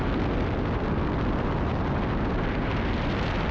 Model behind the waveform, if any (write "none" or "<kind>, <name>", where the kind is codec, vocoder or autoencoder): none